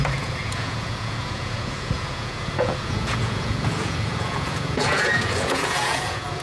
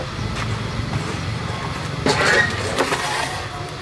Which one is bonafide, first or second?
second